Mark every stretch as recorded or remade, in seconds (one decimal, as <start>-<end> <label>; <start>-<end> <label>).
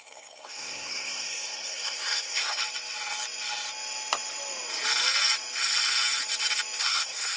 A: 0.0-2.6 remade; 2.6-6.8 recorded; 6.8-7.4 remade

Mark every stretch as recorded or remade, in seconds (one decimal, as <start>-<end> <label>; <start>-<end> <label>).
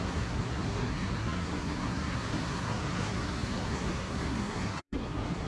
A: 0.0-5.5 remade